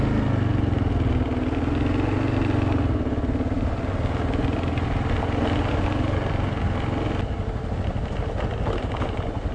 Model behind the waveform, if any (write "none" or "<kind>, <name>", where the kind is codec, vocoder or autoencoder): none